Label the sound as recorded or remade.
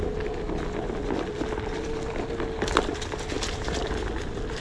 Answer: recorded